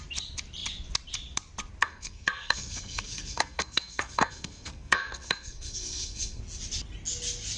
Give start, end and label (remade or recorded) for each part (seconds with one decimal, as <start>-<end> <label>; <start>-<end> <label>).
0.0-1.8 recorded; 1.8-6.4 remade; 6.4-7.6 recorded